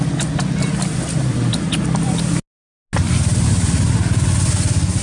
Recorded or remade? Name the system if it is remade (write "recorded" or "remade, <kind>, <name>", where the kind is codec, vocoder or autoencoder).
recorded